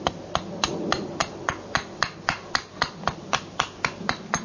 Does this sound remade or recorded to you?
recorded